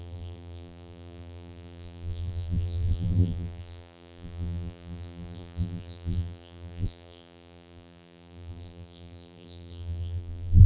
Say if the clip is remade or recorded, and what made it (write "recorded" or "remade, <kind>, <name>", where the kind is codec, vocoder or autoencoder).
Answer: remade, vocoder, BigVGAN v2